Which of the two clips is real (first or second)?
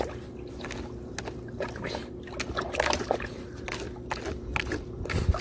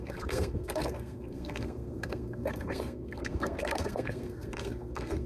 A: first